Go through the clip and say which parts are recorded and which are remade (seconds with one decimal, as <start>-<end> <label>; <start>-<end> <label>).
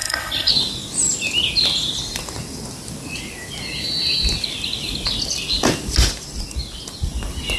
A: 0.0-0.5 remade; 0.5-7.6 recorded